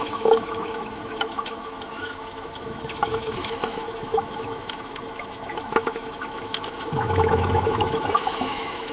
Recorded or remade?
remade